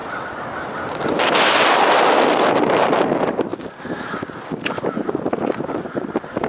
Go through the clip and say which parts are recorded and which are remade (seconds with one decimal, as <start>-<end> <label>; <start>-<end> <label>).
0.0-2.6 recorded; 2.6-3.5 remade; 3.5-4.6 recorded; 4.6-6.5 remade